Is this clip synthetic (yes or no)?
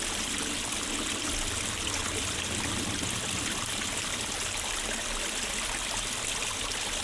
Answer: no